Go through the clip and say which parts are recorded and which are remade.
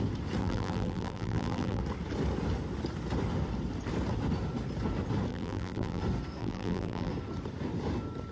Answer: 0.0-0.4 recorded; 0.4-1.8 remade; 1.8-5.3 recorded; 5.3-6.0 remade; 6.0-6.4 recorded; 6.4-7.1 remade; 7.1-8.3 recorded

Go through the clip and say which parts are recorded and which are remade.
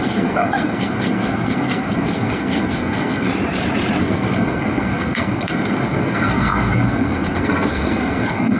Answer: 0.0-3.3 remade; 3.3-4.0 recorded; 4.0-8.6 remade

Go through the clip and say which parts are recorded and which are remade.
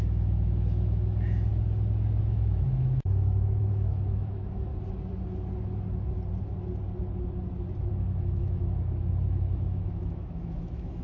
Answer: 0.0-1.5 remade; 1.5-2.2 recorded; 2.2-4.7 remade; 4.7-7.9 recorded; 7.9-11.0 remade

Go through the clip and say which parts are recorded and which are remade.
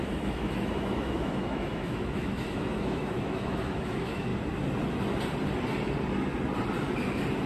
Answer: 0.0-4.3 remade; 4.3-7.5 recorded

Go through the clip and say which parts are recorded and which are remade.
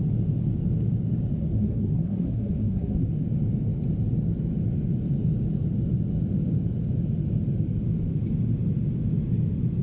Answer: 0.0-1.4 recorded; 1.4-3.1 remade; 3.1-9.8 recorded